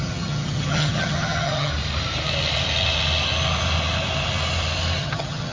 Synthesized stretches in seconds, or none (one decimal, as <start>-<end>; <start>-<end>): 0.0-1.7; 5.0-5.5